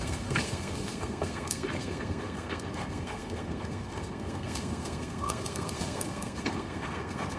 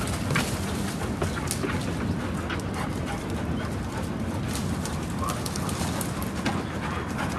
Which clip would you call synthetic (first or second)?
first